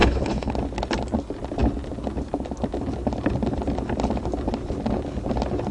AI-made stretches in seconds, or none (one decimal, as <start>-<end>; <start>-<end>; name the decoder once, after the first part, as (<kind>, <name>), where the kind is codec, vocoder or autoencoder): 0.0-0.5 (codec, HILCodec)